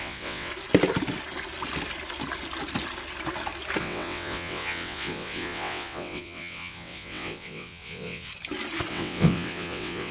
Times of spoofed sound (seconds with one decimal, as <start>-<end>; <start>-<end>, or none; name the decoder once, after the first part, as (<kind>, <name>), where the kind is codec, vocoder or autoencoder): 0.0-0.5 (vocoder, WaveNeXt); 3.8-8.3; 8.9-10.1

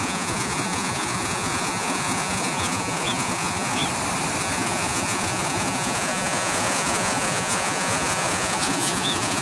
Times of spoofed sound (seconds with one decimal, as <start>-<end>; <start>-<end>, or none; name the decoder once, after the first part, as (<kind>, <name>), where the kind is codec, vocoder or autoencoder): 0.0-3.8 (vocoder, Vocos); 4.4-9.4

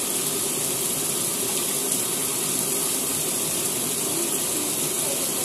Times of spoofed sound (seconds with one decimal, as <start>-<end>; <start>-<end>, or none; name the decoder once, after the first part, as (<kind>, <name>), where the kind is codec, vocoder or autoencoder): 1.3-4.5 (vocoder, BigVGAN v2)

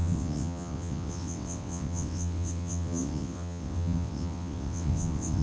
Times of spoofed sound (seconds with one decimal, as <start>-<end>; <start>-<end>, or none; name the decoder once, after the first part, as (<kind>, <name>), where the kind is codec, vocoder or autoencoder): 0.0-5.4 (vocoder, WaveNeXt)

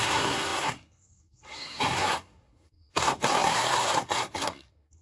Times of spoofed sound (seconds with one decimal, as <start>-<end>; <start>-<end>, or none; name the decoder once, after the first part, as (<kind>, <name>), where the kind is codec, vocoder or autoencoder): 0.0-5.0 (codec, SNAC)

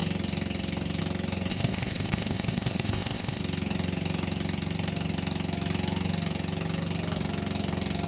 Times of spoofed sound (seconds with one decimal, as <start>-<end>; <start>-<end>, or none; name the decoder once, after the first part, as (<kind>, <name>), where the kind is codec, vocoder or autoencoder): 1.5-3.4 (codec, ZipCodec)